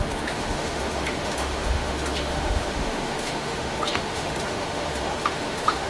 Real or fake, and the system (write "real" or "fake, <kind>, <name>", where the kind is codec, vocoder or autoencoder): fake, autoencoder, DAC-VAE